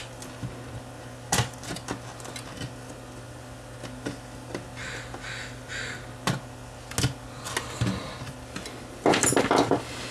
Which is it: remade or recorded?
recorded